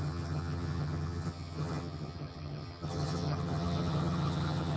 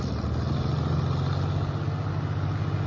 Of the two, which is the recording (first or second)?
second